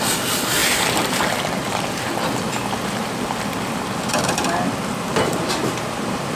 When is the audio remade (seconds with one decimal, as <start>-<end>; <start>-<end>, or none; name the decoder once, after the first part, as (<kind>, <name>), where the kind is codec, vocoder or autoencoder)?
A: none